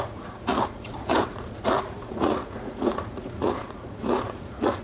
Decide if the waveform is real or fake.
fake